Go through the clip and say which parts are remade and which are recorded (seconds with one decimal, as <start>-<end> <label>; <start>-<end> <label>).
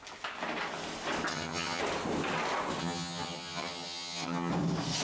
0.0-1.3 recorded; 1.3-1.8 remade; 1.8-2.8 recorded; 2.8-4.5 remade; 4.5-5.0 recorded